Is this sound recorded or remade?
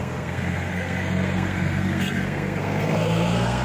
remade